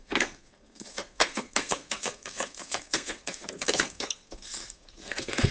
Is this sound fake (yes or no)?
yes